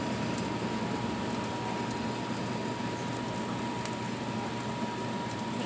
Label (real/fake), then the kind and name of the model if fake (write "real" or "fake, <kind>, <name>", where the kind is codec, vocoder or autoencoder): real